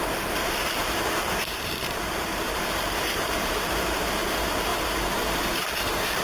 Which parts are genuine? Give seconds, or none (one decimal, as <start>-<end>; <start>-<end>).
none